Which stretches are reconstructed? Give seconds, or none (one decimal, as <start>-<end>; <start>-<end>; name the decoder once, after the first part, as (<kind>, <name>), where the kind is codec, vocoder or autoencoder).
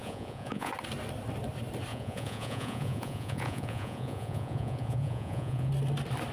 0.0-0.7 (vocoder, Vocos); 1.9-5.7